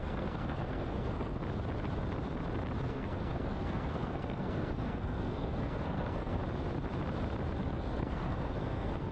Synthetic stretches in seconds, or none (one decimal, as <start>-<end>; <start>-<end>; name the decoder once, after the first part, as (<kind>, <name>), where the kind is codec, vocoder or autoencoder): 0.0-1.4 (codec, SNAC); 2.8-6.4; 7.6-9.1